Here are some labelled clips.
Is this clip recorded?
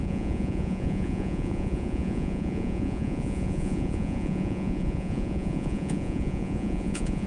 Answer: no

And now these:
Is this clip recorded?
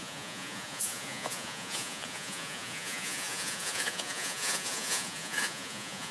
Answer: no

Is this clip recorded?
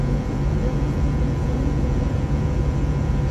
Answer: no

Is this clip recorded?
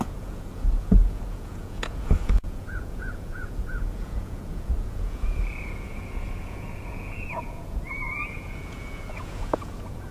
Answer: no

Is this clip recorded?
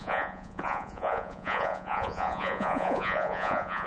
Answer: no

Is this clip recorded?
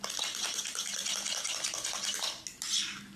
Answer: yes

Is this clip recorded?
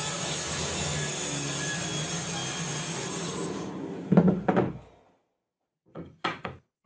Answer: yes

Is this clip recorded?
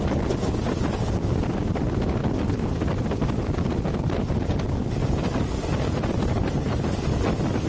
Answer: yes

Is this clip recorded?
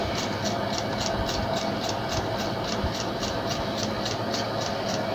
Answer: yes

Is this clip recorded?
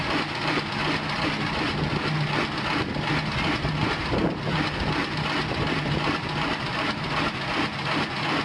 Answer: yes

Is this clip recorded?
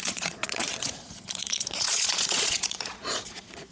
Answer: no